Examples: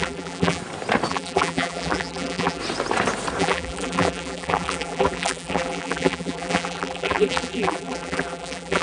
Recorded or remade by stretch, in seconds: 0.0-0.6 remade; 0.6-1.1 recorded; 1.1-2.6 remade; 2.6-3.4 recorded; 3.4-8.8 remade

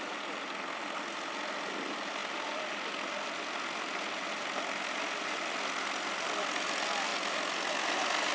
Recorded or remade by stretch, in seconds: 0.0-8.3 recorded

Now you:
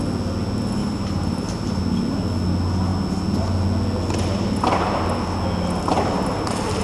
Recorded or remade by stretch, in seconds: 0.0-0.8 recorded; 0.8-1.8 remade; 1.8-6.8 recorded

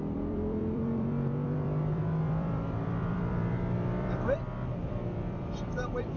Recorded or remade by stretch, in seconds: 0.0-6.2 remade

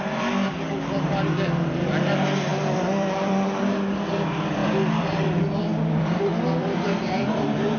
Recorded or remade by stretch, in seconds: 0.0-2.5 recorded; 2.5-3.3 remade; 3.3-4.6 recorded; 4.6-7.8 remade